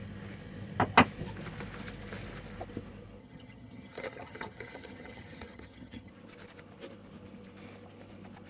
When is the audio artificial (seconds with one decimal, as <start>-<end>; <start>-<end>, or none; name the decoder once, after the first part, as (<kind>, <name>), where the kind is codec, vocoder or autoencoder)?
3.2-6.1 (vocoder, HiFi-GAN)